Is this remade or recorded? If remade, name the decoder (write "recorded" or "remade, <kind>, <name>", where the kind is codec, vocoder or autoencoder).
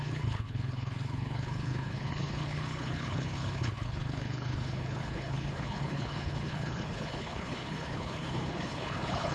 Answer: remade, codec, HILCodec